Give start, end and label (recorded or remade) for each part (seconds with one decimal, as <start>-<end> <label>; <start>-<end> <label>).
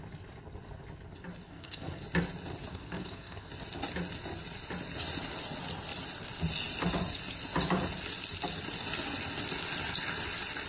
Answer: 0.0-1.5 recorded; 1.5-2.0 remade; 2.0-2.7 recorded; 2.7-3.5 remade; 3.5-10.7 recorded